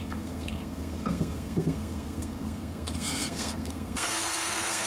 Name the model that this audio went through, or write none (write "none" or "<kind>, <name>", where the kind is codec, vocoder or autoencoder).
codec, SNAC